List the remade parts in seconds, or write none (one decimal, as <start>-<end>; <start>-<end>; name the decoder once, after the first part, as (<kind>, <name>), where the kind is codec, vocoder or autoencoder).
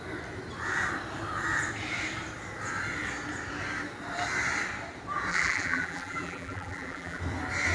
5.3-7.2 (vocoder, BigVGAN v2)